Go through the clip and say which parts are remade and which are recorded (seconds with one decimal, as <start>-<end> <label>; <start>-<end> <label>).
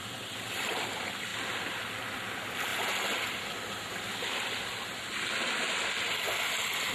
0.0-1.3 remade; 1.3-1.9 recorded; 1.9-2.7 remade; 2.7-6.9 recorded